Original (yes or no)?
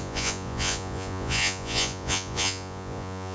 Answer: no